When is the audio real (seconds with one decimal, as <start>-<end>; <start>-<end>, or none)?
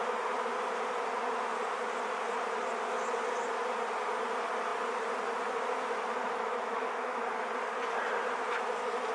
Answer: 0.0-6.2; 7.2-9.1